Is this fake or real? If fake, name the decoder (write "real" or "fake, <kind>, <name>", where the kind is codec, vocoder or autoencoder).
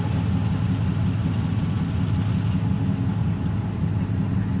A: real